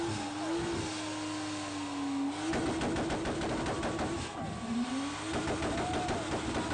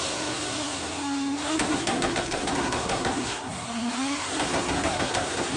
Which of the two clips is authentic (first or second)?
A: first